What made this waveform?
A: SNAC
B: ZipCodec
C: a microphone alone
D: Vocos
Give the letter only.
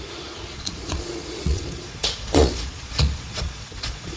D